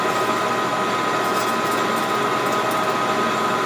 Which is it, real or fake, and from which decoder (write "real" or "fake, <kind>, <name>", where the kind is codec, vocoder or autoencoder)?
real